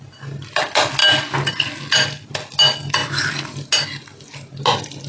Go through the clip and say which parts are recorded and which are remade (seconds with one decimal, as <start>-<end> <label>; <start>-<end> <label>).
0.0-5.1 recorded